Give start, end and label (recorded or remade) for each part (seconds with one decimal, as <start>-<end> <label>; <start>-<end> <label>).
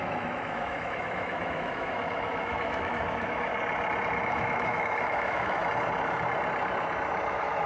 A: 0.0-3.5 remade; 3.5-4.2 recorded; 4.2-5.6 remade; 5.6-7.3 recorded; 7.3-7.7 remade